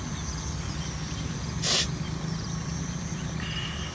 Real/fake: real